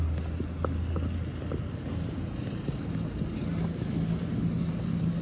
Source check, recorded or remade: recorded